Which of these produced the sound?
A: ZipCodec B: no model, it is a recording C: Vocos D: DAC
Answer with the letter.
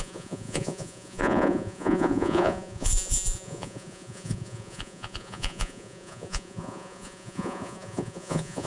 C